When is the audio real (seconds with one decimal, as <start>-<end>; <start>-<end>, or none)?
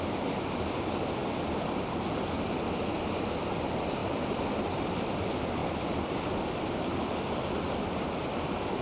0.0-1.2; 1.8-4.0; 5.1-8.8